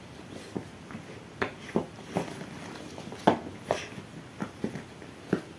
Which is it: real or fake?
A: real